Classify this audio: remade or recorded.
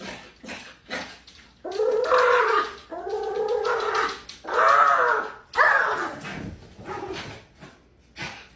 recorded